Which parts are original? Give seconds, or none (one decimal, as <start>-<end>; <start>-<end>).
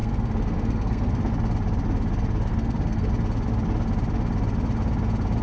1.3-2.5; 3.1-5.4